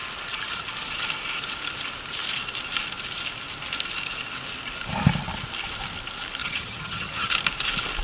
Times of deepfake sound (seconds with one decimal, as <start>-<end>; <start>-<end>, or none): 6.4-7.3